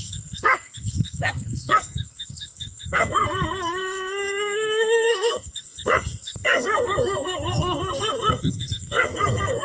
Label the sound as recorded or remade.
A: remade